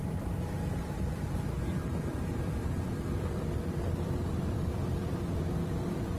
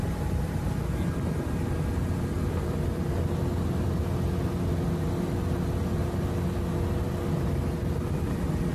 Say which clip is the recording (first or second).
second